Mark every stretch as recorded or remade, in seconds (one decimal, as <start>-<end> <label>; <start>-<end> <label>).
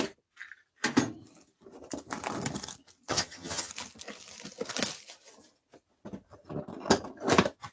0.0-3.1 recorded; 3.1-3.7 remade; 3.7-7.7 recorded